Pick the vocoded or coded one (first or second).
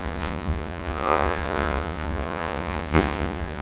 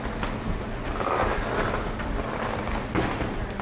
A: first